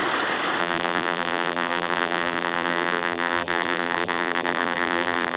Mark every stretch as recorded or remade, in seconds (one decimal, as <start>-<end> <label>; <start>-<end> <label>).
0.0-0.6 recorded; 0.6-5.4 remade